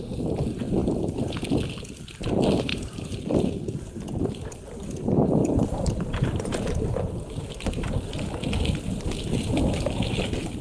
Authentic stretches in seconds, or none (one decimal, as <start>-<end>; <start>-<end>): 0.0-2.7; 3.2-5.4; 6.4-10.6